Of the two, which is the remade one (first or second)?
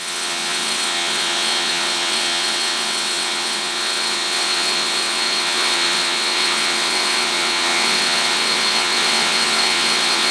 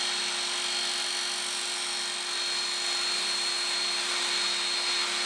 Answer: first